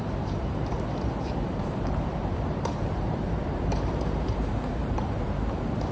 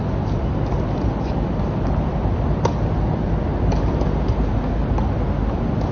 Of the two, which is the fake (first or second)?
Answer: first